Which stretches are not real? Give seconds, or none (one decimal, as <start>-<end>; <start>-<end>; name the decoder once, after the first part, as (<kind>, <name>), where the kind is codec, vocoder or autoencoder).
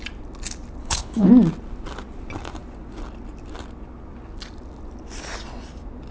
0.8-1.3 (codec, HILCodec)